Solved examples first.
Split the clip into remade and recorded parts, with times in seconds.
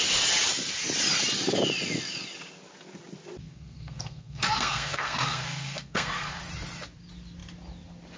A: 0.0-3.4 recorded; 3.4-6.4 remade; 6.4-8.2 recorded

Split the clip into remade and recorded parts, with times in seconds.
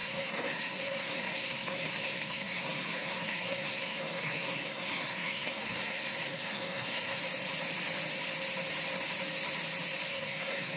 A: 0.0-7.2 remade; 7.2-10.1 recorded; 10.1-10.8 remade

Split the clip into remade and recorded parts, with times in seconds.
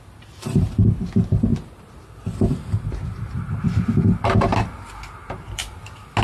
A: 0.0-6.2 recorded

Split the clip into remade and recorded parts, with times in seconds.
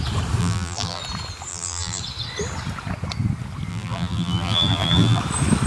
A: 0.0-0.4 recorded; 0.4-1.0 remade; 1.0-1.5 recorded; 1.5-2.0 remade; 2.0-3.7 recorded; 3.7-5.2 remade; 5.2-5.7 recorded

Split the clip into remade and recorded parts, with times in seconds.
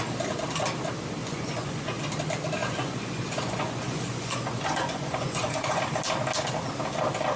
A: 0.0-1.2 recorded; 1.2-2.0 remade; 2.0-2.6 recorded; 2.6-5.8 remade; 5.8-7.4 recorded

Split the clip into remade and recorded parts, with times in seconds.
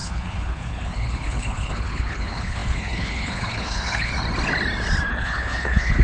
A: 0.0-4.1 remade; 4.1-5.1 recorded; 5.1-6.0 remade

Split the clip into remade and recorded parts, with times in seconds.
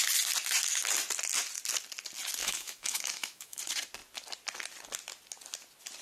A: 0.0-2.4 recorded; 2.4-3.6 remade; 3.6-6.0 recorded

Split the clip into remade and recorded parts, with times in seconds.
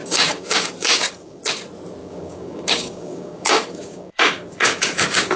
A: 0.0-1.4 remade; 1.4-2.0 recorded; 2.0-5.4 remade